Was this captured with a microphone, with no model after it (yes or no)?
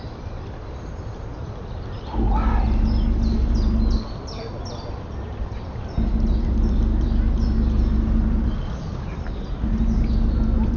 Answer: yes